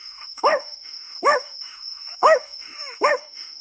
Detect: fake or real fake